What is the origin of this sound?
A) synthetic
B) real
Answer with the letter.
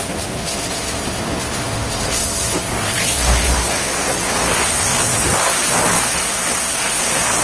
B